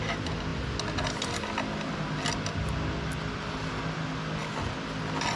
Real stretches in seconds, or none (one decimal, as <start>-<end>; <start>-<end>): 0.0-5.4